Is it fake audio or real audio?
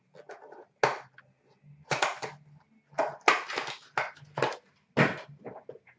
real